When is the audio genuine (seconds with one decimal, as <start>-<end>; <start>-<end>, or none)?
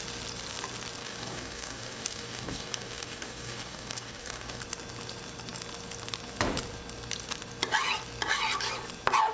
0.0-1.0; 4.6-9.3